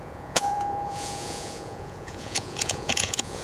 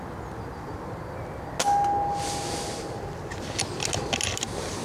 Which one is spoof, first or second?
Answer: first